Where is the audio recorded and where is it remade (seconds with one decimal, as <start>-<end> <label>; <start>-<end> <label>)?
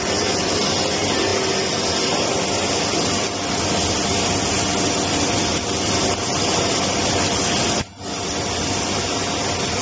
0.0-9.8 recorded